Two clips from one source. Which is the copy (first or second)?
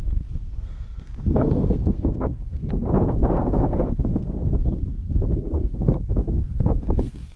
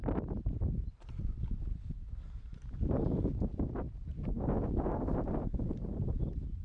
first